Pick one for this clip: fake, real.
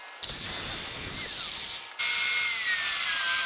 real